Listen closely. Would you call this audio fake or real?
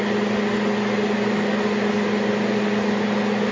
real